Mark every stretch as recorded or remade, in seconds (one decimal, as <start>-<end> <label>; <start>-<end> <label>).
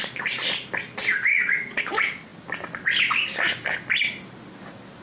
0.0-1.3 recorded; 1.3-1.8 remade; 1.8-5.0 recorded